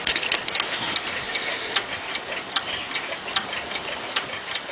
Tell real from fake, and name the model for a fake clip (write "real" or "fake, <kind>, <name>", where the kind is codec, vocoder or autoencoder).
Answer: real